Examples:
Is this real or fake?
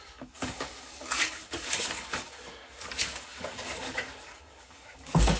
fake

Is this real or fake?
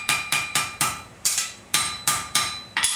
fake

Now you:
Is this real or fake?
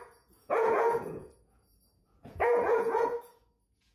fake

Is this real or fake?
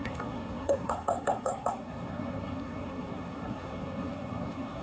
fake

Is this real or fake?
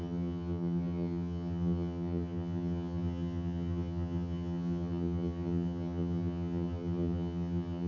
fake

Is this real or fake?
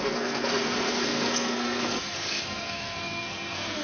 fake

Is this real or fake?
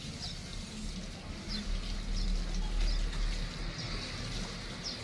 real